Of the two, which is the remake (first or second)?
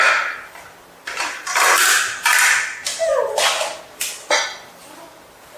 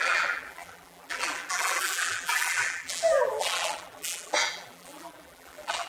second